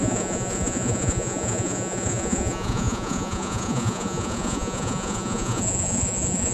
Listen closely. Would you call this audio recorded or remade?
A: remade